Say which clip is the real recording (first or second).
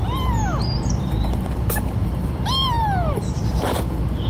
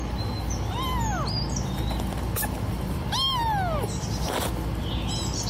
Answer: second